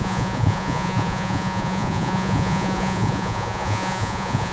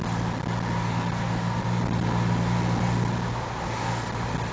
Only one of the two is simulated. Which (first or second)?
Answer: first